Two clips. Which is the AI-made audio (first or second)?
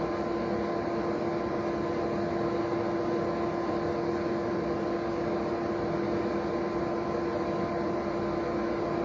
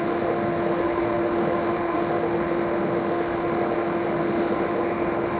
second